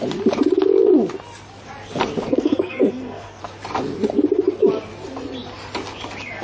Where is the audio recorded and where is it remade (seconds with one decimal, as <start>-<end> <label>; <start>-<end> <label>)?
0.0-2.3 recorded; 2.3-3.4 remade; 3.4-6.4 recorded